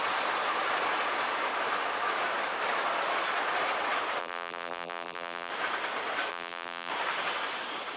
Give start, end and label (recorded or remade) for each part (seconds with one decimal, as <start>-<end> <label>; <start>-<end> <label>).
0.0-4.2 recorded; 4.2-5.5 remade; 5.5-6.3 recorded; 6.3-6.9 remade; 6.9-8.0 recorded